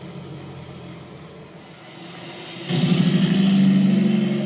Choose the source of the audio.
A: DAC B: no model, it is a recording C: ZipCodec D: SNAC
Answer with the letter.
B